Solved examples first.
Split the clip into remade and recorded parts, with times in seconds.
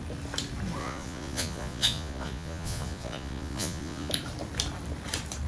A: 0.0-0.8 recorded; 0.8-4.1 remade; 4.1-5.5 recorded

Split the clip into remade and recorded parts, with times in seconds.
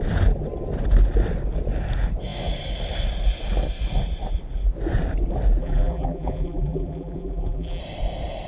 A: 0.0-5.6 recorded; 5.6-7.8 remade; 7.8-8.5 recorded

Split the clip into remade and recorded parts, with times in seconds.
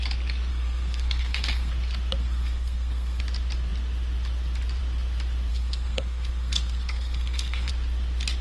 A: 0.0-0.5 recorded; 0.5-1.7 remade; 1.7-2.2 recorded; 2.2-3.2 remade; 3.2-5.5 recorded; 5.5-7.7 remade; 7.7-8.4 recorded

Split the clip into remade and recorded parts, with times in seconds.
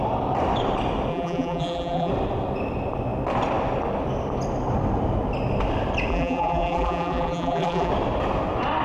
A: 0.0-1.1 recorded; 1.1-2.1 remade; 2.1-6.1 recorded; 6.1-7.9 remade; 7.9-8.8 recorded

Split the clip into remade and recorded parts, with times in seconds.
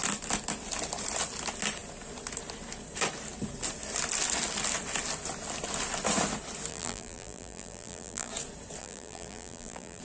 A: 0.0-6.7 recorded; 6.7-8.3 remade; 8.3-8.8 recorded; 8.8-10.0 remade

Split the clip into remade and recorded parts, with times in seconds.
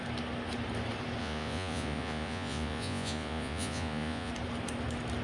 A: 0.0-1.2 recorded; 1.2-4.3 remade; 4.3-5.2 recorded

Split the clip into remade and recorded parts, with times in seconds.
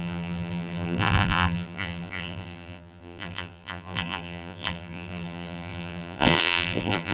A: 0.0-7.1 remade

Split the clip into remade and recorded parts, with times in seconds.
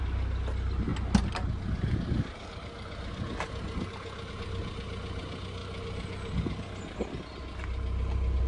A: 0.0-8.5 recorded